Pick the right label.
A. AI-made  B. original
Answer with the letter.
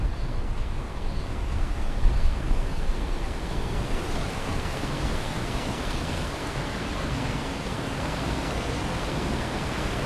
A